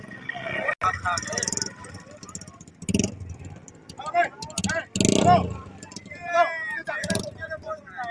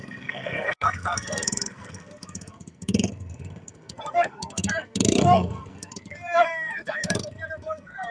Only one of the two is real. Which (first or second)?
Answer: first